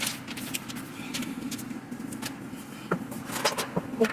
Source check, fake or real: real